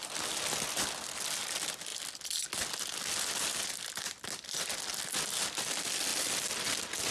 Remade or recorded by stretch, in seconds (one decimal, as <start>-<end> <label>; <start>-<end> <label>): 0.0-7.1 recorded